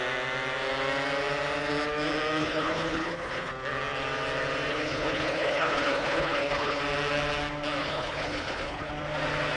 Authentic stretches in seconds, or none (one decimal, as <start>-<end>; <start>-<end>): 0.0-2.4; 3.5-4.7; 6.8-7.8; 8.9-9.6